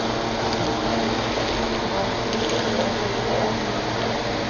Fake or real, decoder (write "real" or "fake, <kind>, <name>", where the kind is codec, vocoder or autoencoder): real